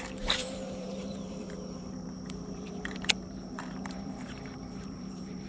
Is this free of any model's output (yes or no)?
no